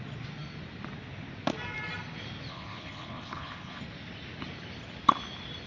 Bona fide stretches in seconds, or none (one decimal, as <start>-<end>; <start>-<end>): 0.0-2.5; 3.8-5.7